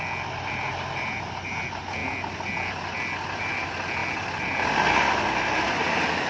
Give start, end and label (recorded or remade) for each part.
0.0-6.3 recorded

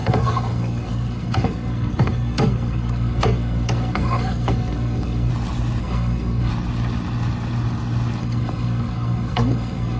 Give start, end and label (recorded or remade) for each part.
0.0-5.3 remade; 5.3-5.8 recorded; 5.8-6.5 remade; 6.5-8.2 recorded; 8.2-10.0 remade

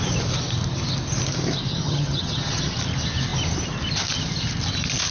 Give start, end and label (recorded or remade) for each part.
0.0-1.7 recorded; 1.7-2.8 remade; 2.8-5.1 recorded

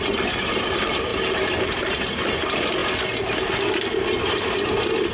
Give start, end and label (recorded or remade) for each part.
0.0-5.1 recorded